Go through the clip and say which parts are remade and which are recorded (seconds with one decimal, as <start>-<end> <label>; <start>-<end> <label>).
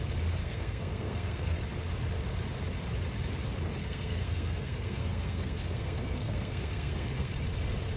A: 0.0-0.4 recorded; 0.4-1.6 remade; 1.6-3.8 recorded; 3.8-7.3 remade; 7.3-8.0 recorded